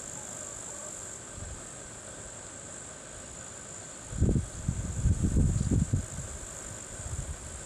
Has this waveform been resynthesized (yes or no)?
no